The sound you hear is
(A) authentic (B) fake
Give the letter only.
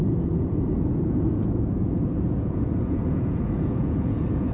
B